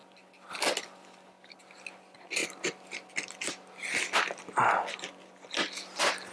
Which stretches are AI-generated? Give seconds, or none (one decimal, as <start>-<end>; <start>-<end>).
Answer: none